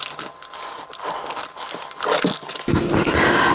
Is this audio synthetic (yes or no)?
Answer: no